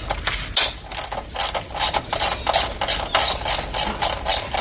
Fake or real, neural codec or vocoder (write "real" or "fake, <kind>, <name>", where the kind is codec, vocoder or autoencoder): real